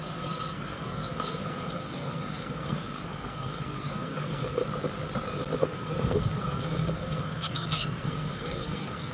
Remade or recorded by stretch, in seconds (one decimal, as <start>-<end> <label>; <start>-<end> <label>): 0.0-4.6 remade; 4.6-5.6 recorded; 5.6-9.1 remade

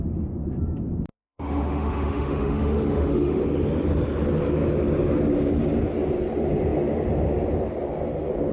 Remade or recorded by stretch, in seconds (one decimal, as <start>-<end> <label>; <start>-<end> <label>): 0.0-1.1 recorded; 1.1-3.4 remade; 3.4-8.5 recorded

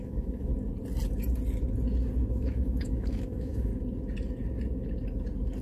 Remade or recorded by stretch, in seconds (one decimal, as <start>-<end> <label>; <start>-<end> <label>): 0.0-0.5 remade; 0.5-2.3 recorded; 2.3-3.7 remade; 3.7-5.6 recorded

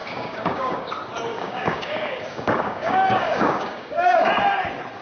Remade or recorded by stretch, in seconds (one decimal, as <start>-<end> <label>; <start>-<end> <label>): 0.0-0.9 remade; 0.9-1.3 recorded; 1.3-4.3 remade; 4.3-5.0 recorded

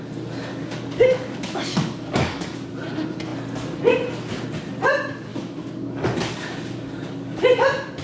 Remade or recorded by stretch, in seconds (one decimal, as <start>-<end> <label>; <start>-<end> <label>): 0.0-0.5 recorded; 0.5-2.7 remade; 2.7-5.3 recorded; 5.3-7.4 remade; 7.4-8.0 recorded

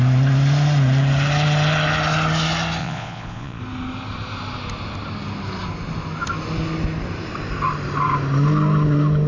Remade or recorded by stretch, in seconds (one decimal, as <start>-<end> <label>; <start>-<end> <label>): 0.0-2.8 recorded; 2.8-3.6 remade; 3.6-9.3 recorded

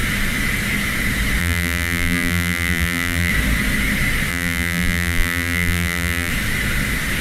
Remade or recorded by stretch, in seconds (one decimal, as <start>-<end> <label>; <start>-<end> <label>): 0.0-1.4 recorded; 1.4-3.3 remade; 3.3-4.3 recorded; 4.3-6.3 remade; 6.3-7.2 recorded